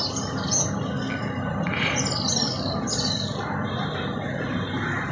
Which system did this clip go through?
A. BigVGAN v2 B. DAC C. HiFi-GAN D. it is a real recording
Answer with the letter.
D